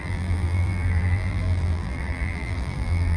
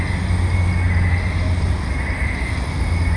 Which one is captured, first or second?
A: second